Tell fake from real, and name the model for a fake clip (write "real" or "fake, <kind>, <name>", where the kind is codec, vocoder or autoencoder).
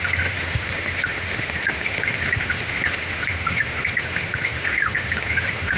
fake, autoencoder, DAC-VAE